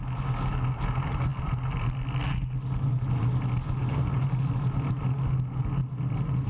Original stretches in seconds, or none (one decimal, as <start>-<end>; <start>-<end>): 0.0-6.5